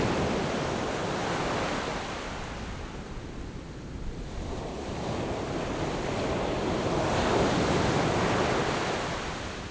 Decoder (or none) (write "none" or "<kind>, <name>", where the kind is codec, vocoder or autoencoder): none